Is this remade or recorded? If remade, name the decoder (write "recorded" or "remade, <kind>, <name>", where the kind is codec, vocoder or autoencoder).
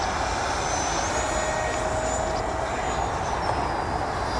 recorded